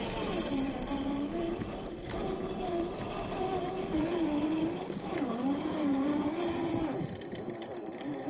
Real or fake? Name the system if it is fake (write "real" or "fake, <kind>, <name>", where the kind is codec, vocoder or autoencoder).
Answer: fake, vocoder, BigVGAN v2